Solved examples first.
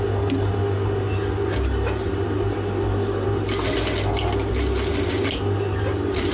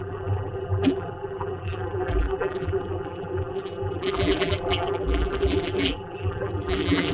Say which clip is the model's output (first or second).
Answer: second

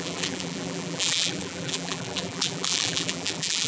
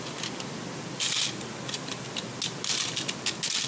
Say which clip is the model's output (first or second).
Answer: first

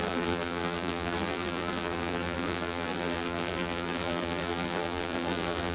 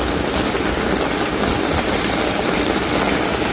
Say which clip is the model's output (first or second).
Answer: first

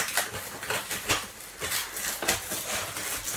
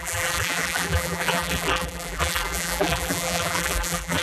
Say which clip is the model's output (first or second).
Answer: second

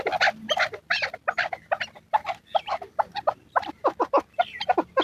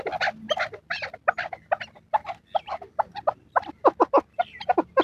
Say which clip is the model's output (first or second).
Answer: first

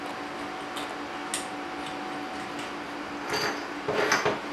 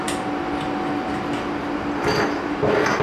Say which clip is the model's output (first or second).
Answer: second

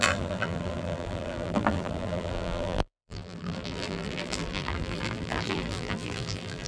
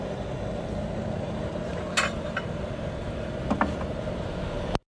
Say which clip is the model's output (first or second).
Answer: first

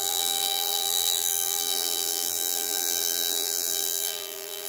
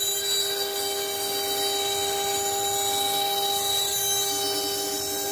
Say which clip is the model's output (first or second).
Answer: first